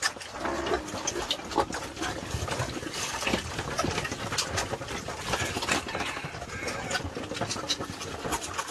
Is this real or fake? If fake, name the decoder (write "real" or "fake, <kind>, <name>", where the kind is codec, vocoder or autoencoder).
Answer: real